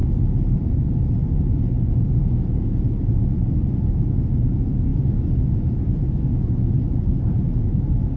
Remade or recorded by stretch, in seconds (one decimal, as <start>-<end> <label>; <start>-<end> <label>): 0.0-8.2 recorded